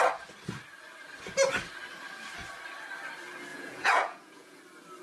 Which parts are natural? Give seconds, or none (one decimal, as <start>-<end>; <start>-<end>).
0.0-3.5; 4.6-5.0